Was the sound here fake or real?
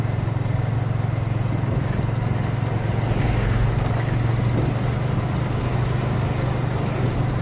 real